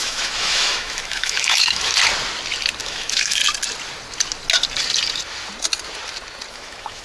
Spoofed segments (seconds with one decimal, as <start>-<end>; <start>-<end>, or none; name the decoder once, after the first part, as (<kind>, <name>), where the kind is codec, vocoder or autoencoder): 0.0-1.9 (autoencoder, DAC-VAE); 2.8-3.4; 6.5-7.0